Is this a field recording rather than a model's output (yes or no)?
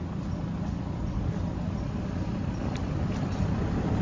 yes